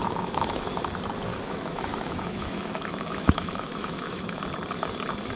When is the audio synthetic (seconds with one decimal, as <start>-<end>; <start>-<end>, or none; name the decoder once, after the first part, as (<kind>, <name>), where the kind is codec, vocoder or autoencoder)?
0.0-0.8 (autoencoder, DAC-VAE); 1.3-4.4